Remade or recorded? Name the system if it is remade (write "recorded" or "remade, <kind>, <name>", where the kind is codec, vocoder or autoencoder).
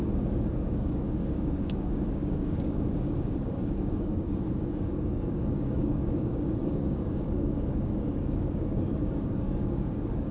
remade, codec, DAC